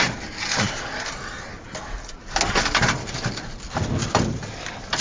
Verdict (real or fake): real